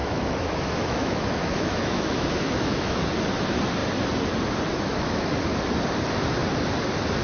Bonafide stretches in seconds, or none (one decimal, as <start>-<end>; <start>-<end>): 3.1-4.7; 5.3-7.2